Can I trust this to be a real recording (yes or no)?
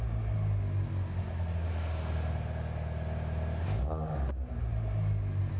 yes